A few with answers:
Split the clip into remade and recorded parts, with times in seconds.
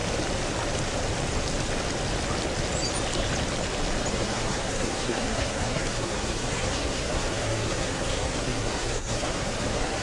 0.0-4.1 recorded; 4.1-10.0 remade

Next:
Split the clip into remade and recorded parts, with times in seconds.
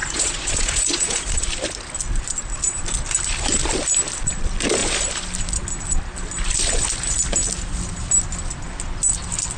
0.0-1.5 remade; 1.5-9.6 recorded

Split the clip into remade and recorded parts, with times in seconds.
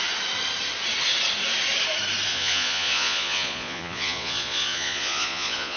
0.0-2.3 recorded; 2.3-5.8 remade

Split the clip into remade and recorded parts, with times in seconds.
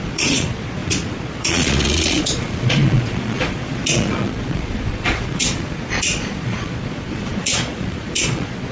0.0-8.7 remade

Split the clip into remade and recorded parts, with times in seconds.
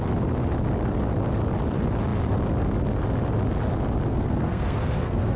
0.0-4.1 recorded; 4.1-5.4 remade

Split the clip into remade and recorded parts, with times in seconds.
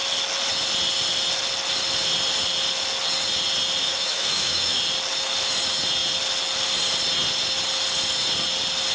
0.0-3.8 recorded; 3.8-4.8 remade; 4.8-8.9 recorded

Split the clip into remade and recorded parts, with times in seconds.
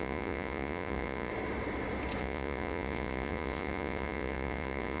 0.0-1.3 remade; 1.3-2.2 recorded; 2.2-5.0 remade